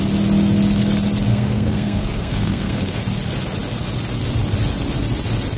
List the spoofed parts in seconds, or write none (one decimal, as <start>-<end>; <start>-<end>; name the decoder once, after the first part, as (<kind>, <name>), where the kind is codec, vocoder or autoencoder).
1.3-3.0 (codec, SNAC)